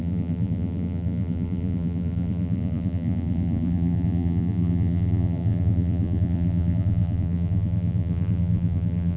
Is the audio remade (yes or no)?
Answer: yes